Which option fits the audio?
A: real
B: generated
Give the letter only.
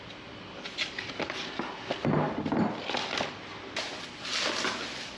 A